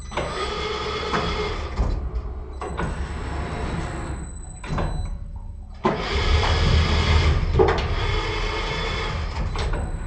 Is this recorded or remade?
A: recorded